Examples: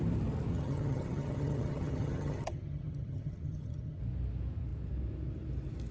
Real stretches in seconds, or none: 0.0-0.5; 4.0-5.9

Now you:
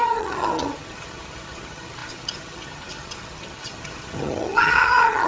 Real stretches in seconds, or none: none

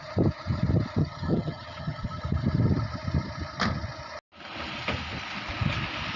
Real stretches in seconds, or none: 0.0-1.0; 2.2-6.2